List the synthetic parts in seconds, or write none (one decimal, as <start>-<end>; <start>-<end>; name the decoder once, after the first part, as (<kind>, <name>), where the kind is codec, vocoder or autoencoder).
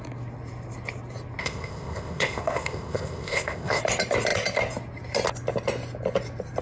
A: 1.4-3.8 (codec, ZipCodec)